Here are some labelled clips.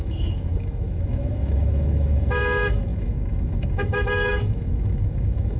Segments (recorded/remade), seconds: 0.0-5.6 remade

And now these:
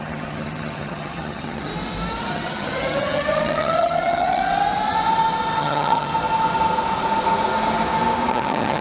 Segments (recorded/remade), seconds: 0.0-1.7 remade; 1.7-2.2 recorded; 2.2-4.4 remade; 4.4-5.6 recorded; 5.6-6.1 remade; 6.1-8.3 recorded; 8.3-8.8 remade

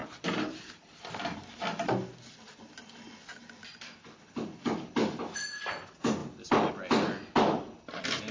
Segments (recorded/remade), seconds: 0.0-1.5 remade; 1.5-8.3 recorded

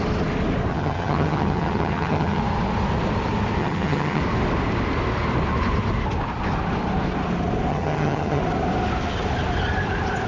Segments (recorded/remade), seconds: 0.0-0.7 recorded; 0.7-2.4 remade; 2.4-3.6 recorded; 3.6-4.2 remade; 4.2-7.7 recorded; 7.7-8.4 remade; 8.4-10.3 recorded

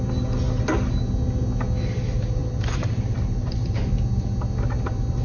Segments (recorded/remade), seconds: 0.0-2.4 recorded; 2.4-3.9 remade; 3.9-5.2 recorded

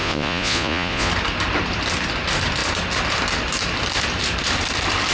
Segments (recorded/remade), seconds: 0.0-1.1 remade; 1.1-5.1 recorded

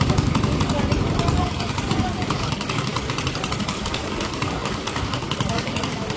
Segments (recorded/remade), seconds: 0.0-0.7 remade; 0.7-2.3 recorded; 2.3-2.9 remade; 2.9-3.6 recorded; 3.6-6.2 remade

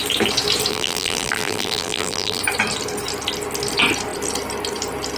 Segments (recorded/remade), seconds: 0.0-0.7 recorded; 0.7-2.4 remade; 2.4-5.2 recorded